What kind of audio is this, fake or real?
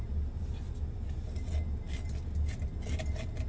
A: real